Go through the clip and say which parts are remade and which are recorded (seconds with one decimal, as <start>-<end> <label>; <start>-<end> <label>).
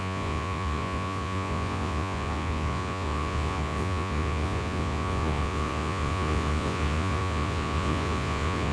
0.0-8.7 remade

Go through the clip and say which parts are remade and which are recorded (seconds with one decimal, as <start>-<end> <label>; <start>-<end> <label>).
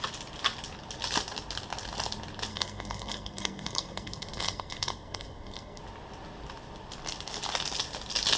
0.0-2.5 recorded; 2.5-5.8 remade; 5.8-8.4 recorded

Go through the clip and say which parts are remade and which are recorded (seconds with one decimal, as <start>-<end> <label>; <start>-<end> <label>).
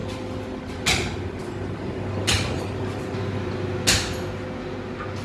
0.0-5.2 recorded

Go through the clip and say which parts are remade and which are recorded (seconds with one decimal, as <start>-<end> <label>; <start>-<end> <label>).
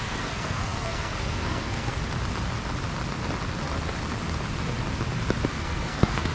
0.0-2.0 remade; 2.0-5.5 recorded; 5.5-6.3 remade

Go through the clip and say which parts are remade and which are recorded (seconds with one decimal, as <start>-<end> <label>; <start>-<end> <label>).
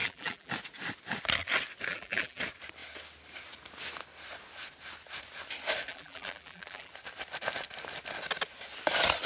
0.0-0.5 remade; 0.5-1.9 recorded; 1.9-2.4 remade; 2.4-5.9 recorded; 5.9-6.9 remade; 6.9-9.3 recorded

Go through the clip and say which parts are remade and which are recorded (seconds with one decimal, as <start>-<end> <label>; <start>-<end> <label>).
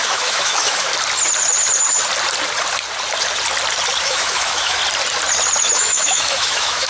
0.0-0.9 remade; 0.9-4.0 recorded; 4.0-4.8 remade; 4.8-5.6 recorded; 5.6-6.9 remade